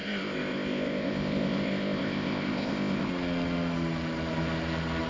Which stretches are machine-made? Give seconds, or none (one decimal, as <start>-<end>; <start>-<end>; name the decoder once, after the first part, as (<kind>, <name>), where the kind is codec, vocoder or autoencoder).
0.0-3.1 (codec, ZipCodec)